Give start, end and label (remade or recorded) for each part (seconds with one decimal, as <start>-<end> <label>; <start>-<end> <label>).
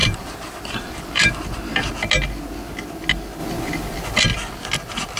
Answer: 0.0-1.3 remade; 1.3-5.2 recorded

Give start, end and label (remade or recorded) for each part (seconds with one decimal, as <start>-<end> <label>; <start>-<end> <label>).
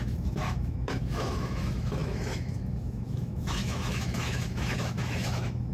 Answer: 0.0-5.7 remade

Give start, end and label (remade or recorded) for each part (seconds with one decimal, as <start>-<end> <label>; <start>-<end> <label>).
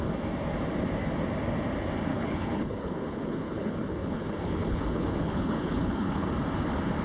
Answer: 0.0-2.1 recorded; 2.1-6.3 remade; 6.3-7.0 recorded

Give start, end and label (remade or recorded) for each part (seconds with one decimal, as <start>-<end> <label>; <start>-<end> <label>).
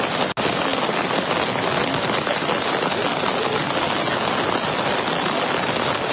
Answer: 0.0-6.1 recorded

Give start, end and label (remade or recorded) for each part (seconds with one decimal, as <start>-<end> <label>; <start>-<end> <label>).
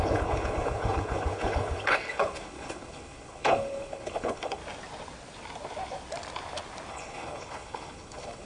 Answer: 0.0-4.6 remade; 4.6-6.9 recorded; 6.9-8.5 remade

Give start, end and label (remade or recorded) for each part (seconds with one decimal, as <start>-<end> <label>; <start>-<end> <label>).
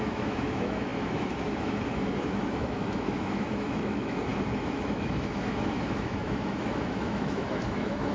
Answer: 0.0-8.1 remade